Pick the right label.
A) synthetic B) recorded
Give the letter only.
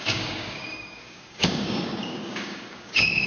A